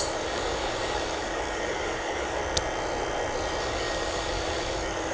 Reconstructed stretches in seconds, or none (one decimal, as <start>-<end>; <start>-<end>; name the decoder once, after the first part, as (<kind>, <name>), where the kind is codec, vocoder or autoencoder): 0.0-2.4 (codec, DAC); 3.6-5.1